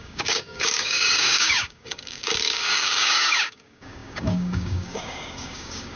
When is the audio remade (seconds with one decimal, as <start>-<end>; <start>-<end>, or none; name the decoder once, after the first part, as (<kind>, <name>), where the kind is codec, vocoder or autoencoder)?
0.0-6.0 (codec, DAC)